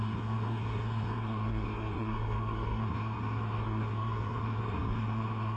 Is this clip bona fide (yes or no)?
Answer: no